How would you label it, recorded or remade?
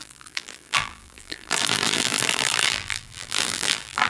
remade